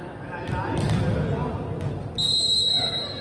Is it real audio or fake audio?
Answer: real